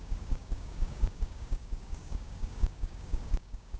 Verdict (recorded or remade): remade